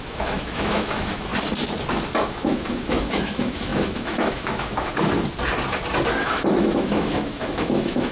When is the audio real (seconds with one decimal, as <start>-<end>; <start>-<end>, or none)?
1.3-2.3; 4.9-6.2